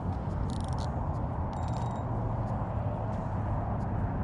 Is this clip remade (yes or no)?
no